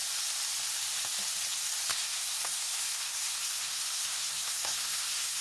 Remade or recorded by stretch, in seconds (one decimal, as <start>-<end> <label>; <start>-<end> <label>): 0.0-1.9 recorded; 1.9-5.4 remade